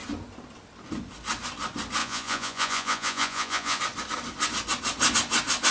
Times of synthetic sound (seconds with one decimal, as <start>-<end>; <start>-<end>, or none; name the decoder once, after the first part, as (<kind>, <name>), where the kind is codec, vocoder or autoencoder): 2.0-3.8 (vocoder, Vocos)